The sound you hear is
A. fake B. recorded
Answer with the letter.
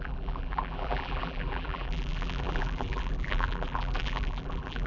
A